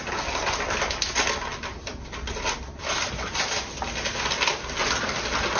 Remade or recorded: recorded